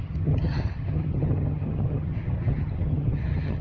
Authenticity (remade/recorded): remade